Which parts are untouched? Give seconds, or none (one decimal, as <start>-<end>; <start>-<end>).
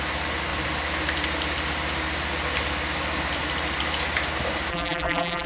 0.0-4.7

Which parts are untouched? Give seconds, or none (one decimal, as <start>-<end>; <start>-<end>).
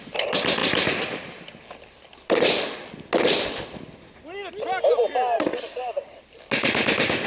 0.0-5.5; 6.2-7.3